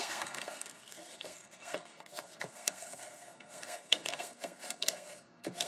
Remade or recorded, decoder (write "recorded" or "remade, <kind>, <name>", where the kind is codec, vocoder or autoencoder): remade, codec, SNAC